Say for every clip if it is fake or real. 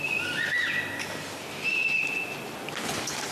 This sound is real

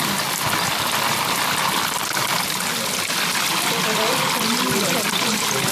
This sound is real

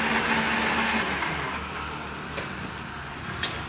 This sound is real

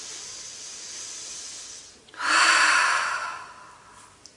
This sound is real